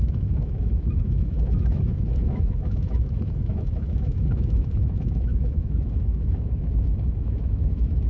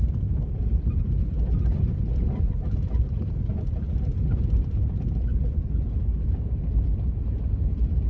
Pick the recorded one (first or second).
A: second